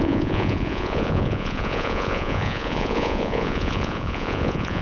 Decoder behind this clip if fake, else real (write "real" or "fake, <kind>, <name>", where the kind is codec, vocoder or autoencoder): fake, vocoder, Vocos